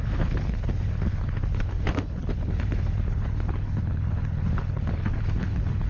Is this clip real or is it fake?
fake